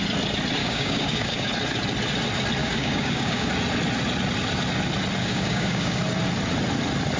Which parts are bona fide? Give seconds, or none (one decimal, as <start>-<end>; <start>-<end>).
0.0-0.6; 1.5-2.6; 3.5-5.2; 6.0-7.2